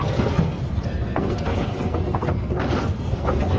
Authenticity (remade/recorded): remade